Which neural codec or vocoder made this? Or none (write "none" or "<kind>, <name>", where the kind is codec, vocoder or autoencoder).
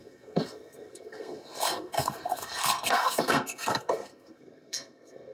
codec, SNAC